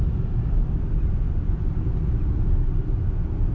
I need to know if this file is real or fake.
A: real